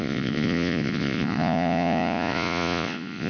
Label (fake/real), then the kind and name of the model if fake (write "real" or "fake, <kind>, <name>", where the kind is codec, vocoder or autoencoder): fake, vocoder, Vocos